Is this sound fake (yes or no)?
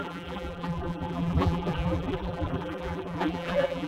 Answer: yes